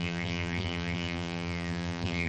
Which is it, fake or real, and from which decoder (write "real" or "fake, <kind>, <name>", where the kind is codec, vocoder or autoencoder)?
fake, vocoder, BigVGAN v2